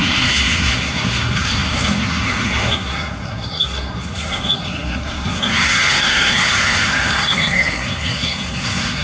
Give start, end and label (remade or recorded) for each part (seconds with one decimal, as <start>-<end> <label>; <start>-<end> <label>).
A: 0.0-9.0 remade